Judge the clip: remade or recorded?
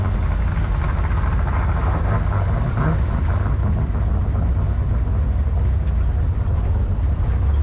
recorded